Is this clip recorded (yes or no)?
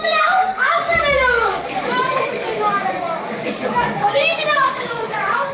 no